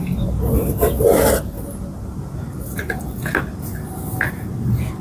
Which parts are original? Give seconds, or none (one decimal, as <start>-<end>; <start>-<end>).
0.0-5.0